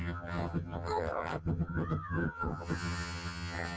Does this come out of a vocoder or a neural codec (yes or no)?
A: yes